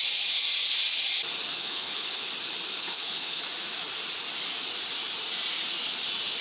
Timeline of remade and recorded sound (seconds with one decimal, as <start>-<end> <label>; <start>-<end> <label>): 0.0-1.5 recorded; 1.5-2.3 remade; 2.3-2.8 recorded; 2.8-3.4 remade; 3.4-6.4 recorded